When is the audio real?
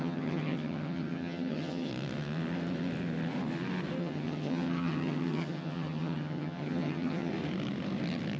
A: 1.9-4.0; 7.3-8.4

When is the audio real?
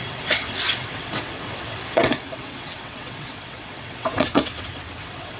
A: none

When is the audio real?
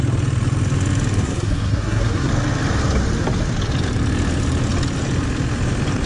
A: 0.0-1.2; 2.3-6.1